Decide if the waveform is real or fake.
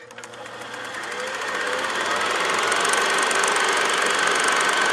real